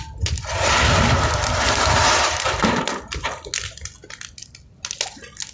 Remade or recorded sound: recorded